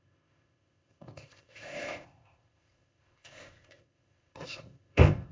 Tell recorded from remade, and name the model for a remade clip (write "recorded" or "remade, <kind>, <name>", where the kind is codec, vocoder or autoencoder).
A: remade, codec, ZipCodec